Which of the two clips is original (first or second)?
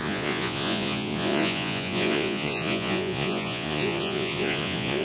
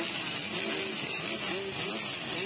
second